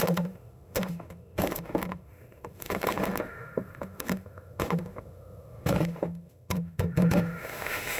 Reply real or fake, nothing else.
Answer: fake